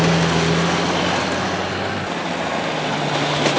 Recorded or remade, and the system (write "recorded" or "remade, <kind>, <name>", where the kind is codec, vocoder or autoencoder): recorded